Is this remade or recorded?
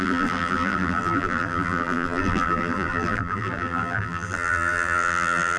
remade